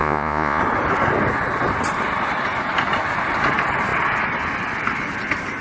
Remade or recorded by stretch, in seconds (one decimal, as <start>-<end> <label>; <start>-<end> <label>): 0.0-0.6 remade; 0.6-5.6 recorded